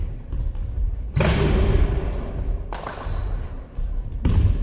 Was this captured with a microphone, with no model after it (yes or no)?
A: yes